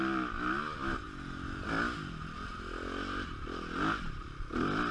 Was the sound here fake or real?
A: real